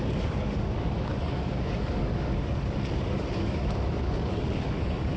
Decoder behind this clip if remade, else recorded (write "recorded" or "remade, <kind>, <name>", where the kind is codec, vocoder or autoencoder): remade, codec, DAC